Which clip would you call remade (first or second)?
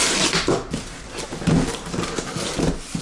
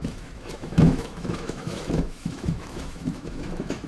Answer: second